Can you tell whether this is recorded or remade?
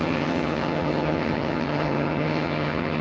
remade